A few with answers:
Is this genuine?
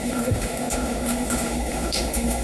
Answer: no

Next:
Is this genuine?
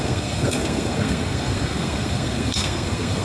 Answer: no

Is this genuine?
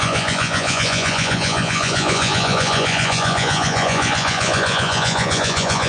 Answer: no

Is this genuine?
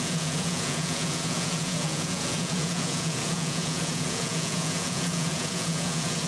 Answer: no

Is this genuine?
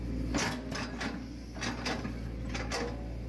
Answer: yes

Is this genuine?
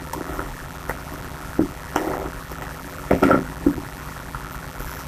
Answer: no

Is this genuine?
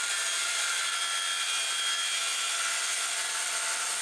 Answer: yes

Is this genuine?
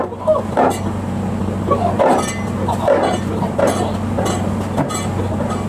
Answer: yes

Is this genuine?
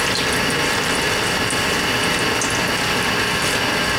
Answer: yes